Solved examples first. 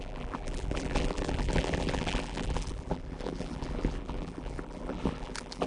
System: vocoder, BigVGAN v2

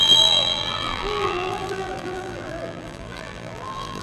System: vocoder, BigVGAN v2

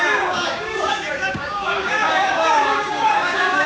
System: codec, DAC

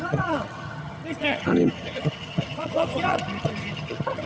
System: vocoder, HiFi-GAN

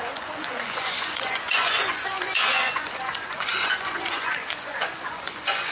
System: vocoder, Vocos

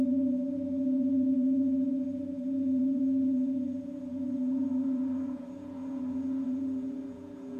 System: vocoder, Vocos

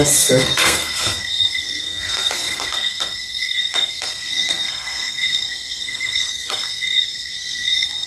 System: codec, SNAC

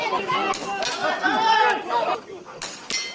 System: none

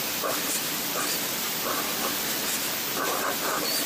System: vocoder, BigVGAN v2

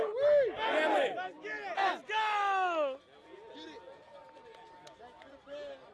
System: none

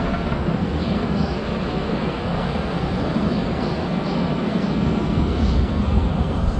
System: codec, SNAC